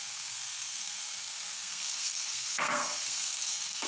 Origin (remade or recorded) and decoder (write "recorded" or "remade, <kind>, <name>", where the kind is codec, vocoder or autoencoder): remade, codec, SNAC